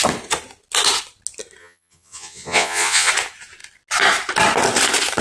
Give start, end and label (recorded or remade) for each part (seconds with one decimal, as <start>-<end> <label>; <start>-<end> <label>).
0.0-1.6 recorded; 1.6-3.1 remade; 3.1-5.2 recorded